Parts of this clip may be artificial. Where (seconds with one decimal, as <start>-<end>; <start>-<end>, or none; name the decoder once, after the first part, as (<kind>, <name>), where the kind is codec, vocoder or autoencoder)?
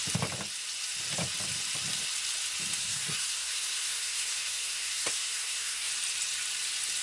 2.8-5.9 (codec, SNAC)